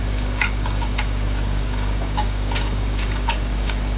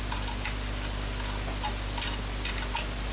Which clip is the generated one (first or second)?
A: first